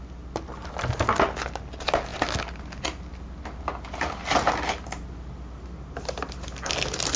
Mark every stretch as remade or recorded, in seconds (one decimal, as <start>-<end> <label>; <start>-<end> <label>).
0.0-7.2 recorded